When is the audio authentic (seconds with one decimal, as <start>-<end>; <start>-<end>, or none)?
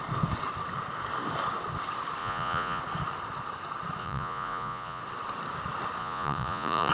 0.0-2.2; 2.8-4.0; 5.0-6.0